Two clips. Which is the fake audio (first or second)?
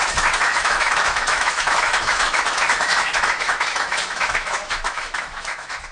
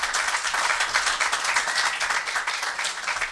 first